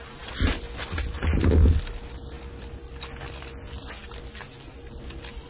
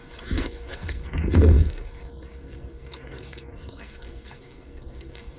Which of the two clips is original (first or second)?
first